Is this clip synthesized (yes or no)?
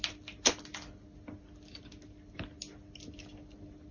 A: no